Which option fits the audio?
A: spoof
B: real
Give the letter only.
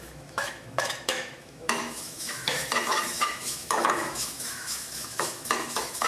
A